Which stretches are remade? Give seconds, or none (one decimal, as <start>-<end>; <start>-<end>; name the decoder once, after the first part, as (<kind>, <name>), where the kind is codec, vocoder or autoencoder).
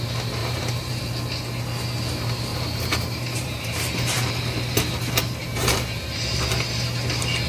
0.4-1.0 (vocoder, BigVGAN v2); 2.5-4.3; 5.4-6.2